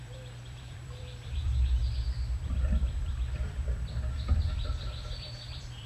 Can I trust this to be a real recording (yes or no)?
no